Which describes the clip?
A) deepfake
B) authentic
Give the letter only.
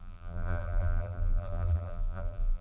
A